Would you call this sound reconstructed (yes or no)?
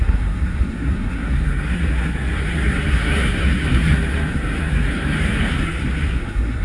yes